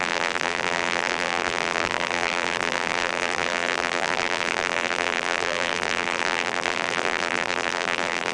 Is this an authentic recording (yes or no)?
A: no